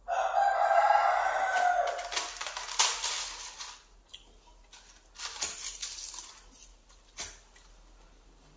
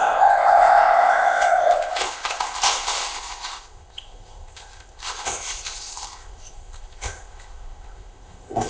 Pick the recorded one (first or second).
first